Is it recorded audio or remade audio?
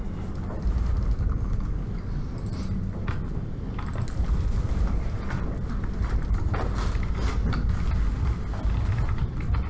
recorded